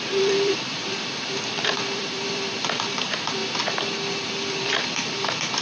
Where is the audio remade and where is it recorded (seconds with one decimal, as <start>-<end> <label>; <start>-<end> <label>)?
0.0-3.4 remade; 3.4-4.5 recorded; 4.5-5.6 remade

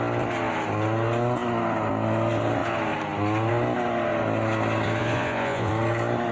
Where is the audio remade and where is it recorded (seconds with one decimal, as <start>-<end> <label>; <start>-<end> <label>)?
0.0-5.0 recorded; 5.0-5.7 remade; 5.7-6.3 recorded

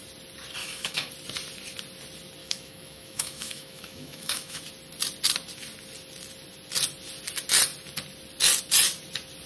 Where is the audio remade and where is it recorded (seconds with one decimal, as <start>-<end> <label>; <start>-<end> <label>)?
0.0-0.6 recorded; 0.6-1.1 remade; 1.1-2.4 recorded; 2.4-4.6 remade; 4.6-9.5 recorded

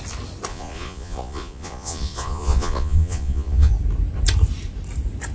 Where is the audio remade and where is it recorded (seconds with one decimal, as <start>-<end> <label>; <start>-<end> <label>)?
0.0-0.5 recorded; 0.5-3.7 remade; 3.7-5.3 recorded

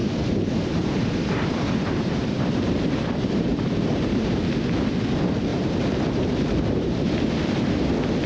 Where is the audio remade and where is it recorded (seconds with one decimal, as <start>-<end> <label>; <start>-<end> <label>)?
0.0-4.4 remade; 4.4-5.5 recorded; 5.5-7.6 remade; 7.6-8.3 recorded

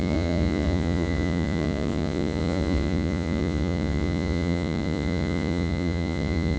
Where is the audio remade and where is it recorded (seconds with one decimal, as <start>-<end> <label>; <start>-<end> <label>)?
0.0-6.6 remade

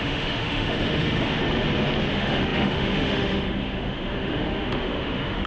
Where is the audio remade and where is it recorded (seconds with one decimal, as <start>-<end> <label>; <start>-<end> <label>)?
0.0-1.4 remade; 1.4-2.1 recorded; 2.1-5.5 remade